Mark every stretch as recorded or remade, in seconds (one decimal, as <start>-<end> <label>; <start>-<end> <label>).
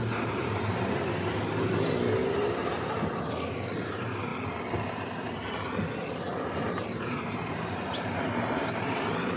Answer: 0.0-4.3 remade; 4.3-4.9 recorded; 4.9-5.4 remade; 5.4-6.3 recorded; 6.3-9.4 remade